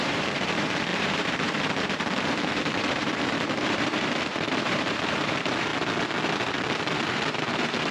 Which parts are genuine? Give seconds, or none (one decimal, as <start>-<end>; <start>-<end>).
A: 5.7-6.5